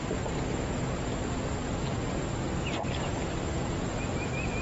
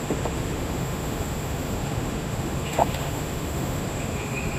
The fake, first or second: second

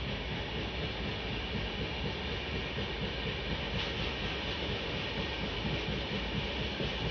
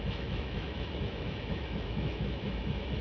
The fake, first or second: second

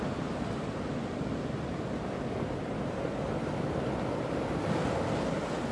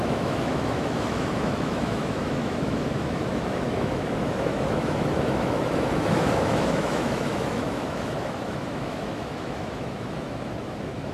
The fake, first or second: second